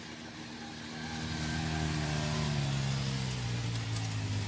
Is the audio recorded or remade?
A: recorded